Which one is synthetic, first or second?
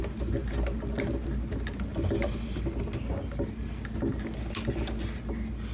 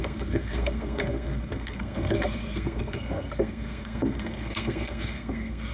second